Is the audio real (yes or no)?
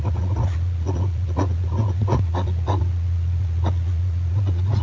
no